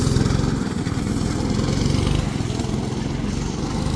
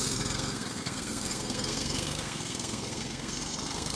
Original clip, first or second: first